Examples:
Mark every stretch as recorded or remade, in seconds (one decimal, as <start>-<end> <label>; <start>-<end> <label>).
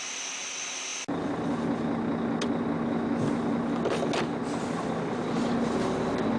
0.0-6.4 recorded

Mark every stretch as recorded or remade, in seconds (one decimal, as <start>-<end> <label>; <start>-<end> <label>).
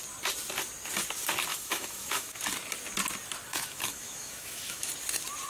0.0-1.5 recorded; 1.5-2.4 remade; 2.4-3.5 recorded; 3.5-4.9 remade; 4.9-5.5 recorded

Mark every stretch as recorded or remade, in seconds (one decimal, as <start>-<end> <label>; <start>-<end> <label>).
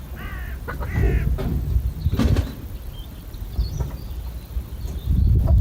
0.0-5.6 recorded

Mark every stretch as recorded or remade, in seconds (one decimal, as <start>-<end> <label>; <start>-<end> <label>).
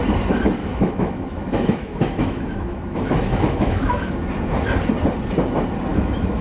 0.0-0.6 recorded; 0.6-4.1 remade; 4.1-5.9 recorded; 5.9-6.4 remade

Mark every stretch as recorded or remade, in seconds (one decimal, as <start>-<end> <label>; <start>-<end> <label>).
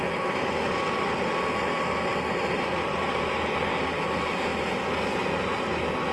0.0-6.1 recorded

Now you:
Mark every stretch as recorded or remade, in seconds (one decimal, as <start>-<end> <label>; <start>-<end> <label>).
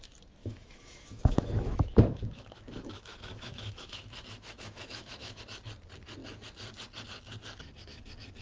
0.0-0.4 recorded; 0.4-5.4 remade; 5.4-8.4 recorded